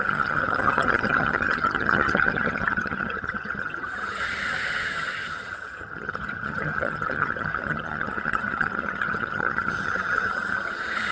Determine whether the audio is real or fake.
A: fake